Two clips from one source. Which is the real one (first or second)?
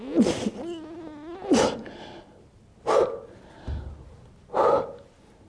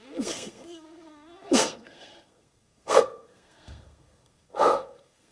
first